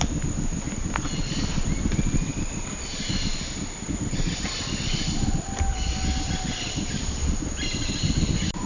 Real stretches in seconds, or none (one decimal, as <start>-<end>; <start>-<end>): 0.0-5.7; 7.0-8.7